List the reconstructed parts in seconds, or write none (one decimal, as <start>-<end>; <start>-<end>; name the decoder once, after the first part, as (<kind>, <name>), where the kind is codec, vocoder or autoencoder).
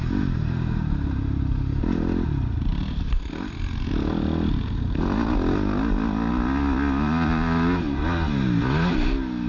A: none